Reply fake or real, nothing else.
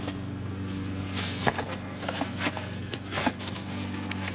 fake